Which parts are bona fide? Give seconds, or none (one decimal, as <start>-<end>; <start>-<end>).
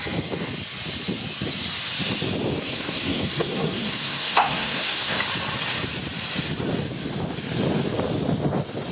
0.0-2.6; 5.2-8.9